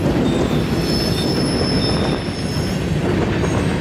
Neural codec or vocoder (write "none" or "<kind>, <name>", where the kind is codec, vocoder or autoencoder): none